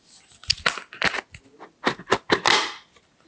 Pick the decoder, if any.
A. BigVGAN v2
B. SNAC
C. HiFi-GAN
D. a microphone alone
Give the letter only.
D